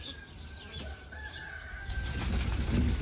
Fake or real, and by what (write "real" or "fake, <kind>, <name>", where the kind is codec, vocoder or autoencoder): real